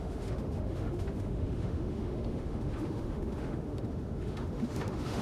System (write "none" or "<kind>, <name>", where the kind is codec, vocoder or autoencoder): autoencoder, DAC-VAE